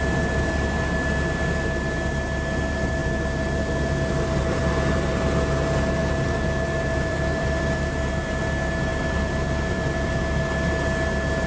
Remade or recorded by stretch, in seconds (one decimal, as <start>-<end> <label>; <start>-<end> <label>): 0.0-3.0 recorded; 3.0-5.1 remade; 5.1-6.0 recorded; 6.0-8.4 remade; 8.4-8.9 recorded; 8.9-10.2 remade; 10.2-11.5 recorded